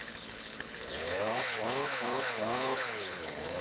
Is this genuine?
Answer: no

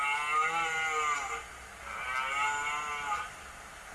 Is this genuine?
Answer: yes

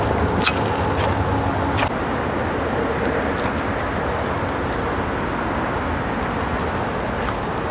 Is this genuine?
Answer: yes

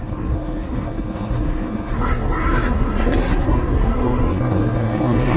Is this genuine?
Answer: no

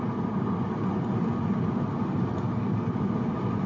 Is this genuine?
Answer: yes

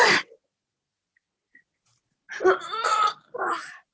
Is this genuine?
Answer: yes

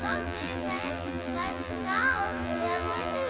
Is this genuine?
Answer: no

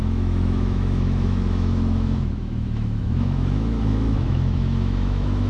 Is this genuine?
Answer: no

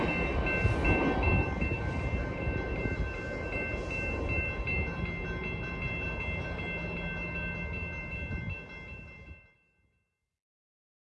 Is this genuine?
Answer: yes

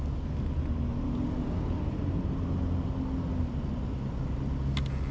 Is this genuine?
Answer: yes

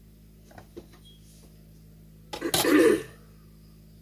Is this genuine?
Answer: yes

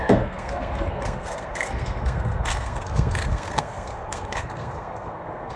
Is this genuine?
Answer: no